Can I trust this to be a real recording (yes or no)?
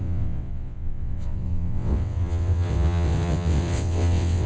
no